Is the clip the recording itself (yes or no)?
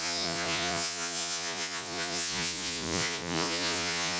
no